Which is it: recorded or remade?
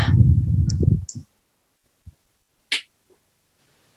recorded